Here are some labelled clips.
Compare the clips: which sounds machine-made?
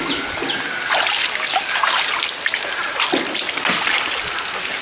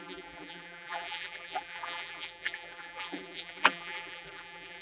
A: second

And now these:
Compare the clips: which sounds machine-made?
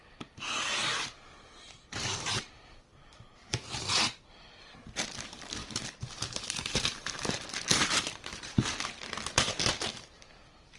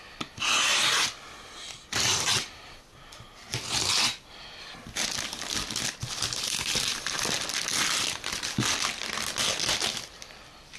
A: first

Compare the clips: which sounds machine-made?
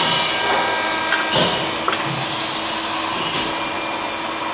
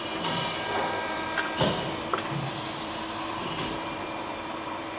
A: second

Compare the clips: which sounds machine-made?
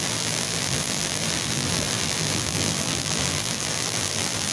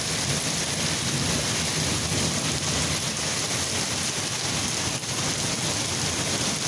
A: first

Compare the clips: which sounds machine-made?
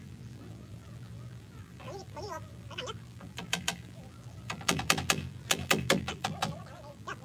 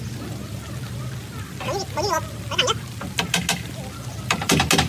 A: first